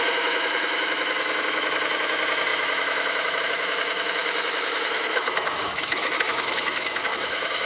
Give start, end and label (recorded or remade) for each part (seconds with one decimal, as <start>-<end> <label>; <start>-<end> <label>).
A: 0.0-7.7 remade